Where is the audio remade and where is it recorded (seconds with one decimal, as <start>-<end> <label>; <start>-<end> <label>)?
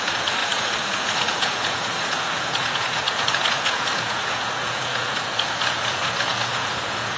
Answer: 0.0-7.2 remade